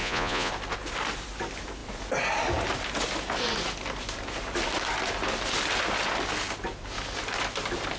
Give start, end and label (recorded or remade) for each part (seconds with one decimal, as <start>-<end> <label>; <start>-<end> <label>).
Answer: 0.0-0.5 remade; 0.5-8.0 recorded